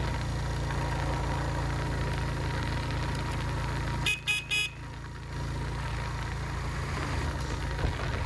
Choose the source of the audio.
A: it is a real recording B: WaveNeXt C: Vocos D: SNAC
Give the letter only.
A